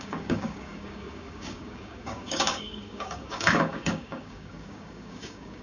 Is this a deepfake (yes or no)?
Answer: yes